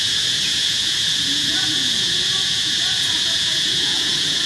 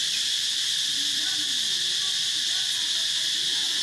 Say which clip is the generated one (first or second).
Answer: first